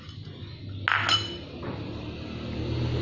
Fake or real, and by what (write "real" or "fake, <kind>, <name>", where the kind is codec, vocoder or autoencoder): real